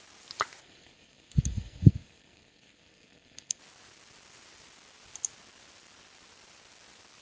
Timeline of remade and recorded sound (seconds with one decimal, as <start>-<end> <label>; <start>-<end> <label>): 0.0-0.6 recorded; 0.6-3.6 remade; 3.6-7.2 recorded